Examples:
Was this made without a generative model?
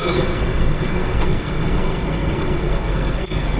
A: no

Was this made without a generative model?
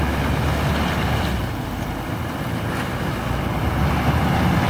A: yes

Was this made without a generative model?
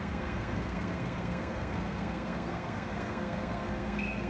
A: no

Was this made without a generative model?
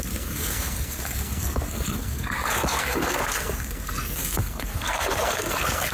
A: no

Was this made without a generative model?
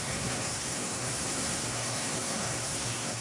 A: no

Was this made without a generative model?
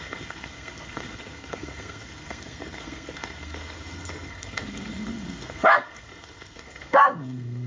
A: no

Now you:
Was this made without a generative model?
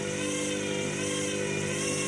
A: yes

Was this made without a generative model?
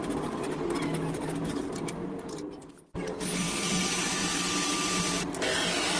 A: yes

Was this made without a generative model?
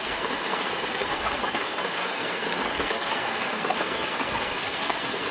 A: no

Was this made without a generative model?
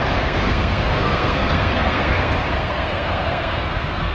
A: no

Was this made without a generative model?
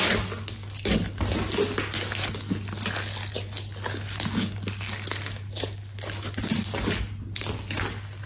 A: yes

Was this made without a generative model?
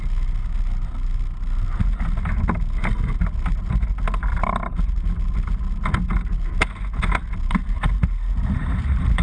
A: yes